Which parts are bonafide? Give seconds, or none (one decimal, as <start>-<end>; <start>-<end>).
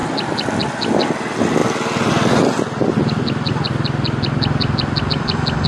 0.0-5.7